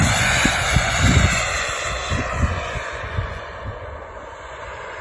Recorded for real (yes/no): no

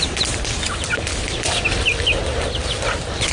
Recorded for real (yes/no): yes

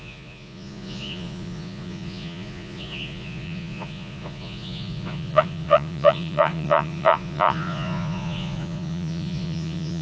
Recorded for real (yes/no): no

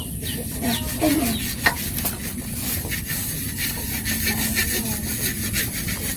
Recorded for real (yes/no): yes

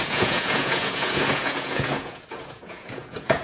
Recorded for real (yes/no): no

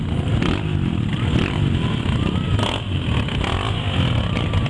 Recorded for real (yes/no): yes